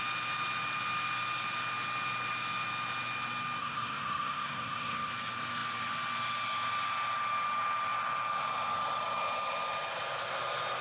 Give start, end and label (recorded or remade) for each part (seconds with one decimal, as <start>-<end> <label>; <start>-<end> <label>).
0.0-3.6 recorded; 3.6-5.1 remade; 5.1-10.8 recorded